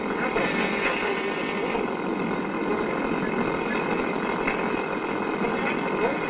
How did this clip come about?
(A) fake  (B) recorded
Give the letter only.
B